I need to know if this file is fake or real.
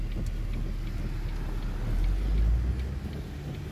real